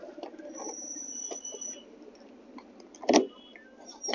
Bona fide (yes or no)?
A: yes